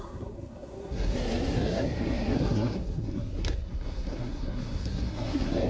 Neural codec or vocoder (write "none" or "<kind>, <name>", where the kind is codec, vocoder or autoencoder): codec, SNAC